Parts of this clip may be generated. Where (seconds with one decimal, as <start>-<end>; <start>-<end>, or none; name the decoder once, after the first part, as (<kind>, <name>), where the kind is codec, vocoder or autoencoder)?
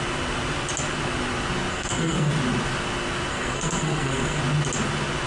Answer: 1.7-2.3 (codec, SNAC); 3.3-4.4